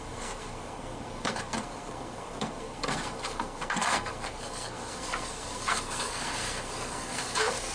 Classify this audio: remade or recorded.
remade